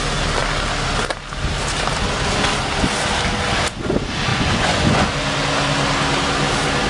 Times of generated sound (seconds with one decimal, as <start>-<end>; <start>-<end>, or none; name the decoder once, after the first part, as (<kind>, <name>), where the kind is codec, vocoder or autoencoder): 4.3-5.1 (vocoder, Vocos)